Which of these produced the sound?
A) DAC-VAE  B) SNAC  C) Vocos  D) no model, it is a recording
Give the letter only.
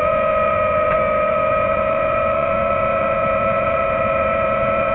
C